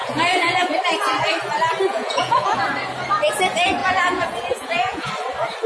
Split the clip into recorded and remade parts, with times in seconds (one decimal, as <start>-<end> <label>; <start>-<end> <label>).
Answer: 0.0-0.8 remade; 0.8-1.9 recorded; 1.9-2.6 remade; 2.6-3.8 recorded; 3.8-5.1 remade; 5.1-5.7 recorded